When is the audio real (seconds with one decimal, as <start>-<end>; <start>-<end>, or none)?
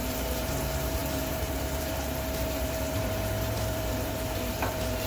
none